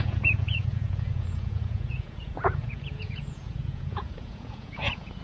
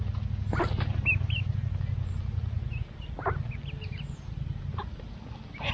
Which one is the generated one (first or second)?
first